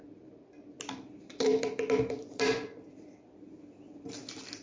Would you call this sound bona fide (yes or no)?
yes